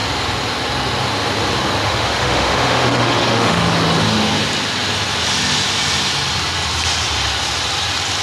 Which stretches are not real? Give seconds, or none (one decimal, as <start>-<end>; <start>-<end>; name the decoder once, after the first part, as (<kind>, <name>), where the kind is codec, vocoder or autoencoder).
1.8-3.7 (autoencoder, DAC-VAE)